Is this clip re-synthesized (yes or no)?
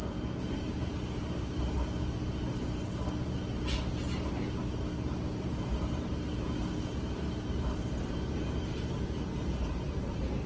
no